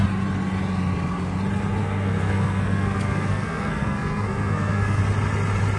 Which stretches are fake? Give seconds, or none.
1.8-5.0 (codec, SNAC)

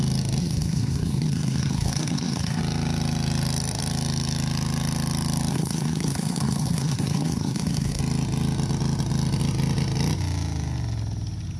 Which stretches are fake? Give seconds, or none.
0.4-2.6 (codec, SNAC); 5.5-8.0

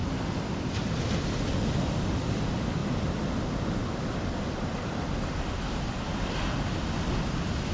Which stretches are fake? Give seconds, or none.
none